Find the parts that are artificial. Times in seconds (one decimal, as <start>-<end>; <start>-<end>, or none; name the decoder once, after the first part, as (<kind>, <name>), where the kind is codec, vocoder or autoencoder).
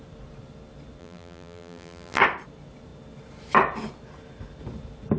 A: 1.0-2.2 (vocoder, BigVGAN v2)